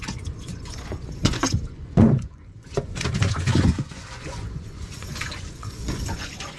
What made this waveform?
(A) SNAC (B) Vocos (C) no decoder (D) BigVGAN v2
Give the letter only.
B